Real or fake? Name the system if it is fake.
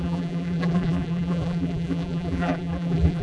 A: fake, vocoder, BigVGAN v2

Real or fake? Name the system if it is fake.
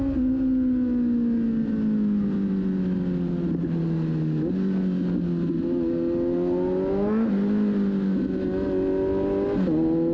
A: real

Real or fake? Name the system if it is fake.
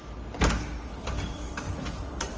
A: real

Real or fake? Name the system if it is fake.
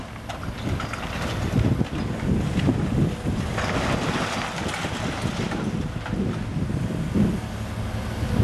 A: real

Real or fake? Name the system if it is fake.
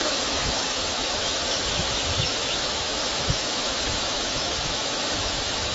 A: fake, autoencoder, DAC-VAE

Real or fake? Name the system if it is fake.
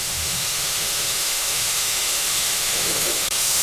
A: fake, autoencoder, DAC-VAE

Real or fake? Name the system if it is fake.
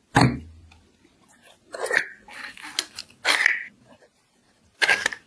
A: real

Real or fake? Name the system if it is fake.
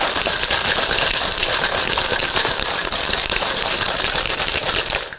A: fake, vocoder, BigVGAN v2